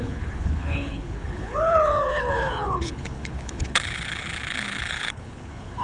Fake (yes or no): yes